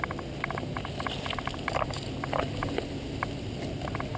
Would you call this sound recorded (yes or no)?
yes